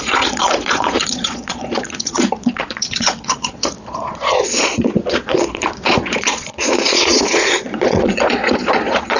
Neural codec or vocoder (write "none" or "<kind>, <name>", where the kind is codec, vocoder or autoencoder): vocoder, Vocos